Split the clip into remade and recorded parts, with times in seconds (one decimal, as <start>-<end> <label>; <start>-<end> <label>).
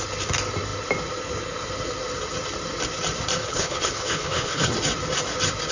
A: 0.0-3.4 recorded; 3.4-4.7 remade; 4.7-5.7 recorded